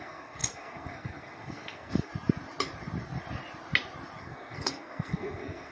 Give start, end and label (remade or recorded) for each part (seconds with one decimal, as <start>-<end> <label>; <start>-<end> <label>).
0.0-2.1 remade; 2.1-4.2 recorded; 4.2-5.7 remade